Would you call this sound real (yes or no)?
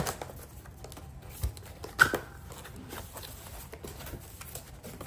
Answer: yes